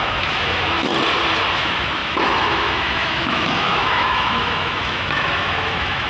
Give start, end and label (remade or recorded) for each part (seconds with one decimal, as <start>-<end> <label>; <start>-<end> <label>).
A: 0.0-0.9 remade; 0.9-1.5 recorded; 1.5-6.1 remade